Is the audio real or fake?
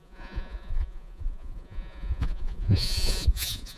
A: fake